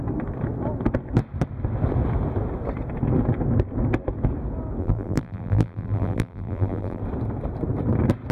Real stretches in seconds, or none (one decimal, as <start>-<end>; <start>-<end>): 0.0-4.8; 7.0-8.3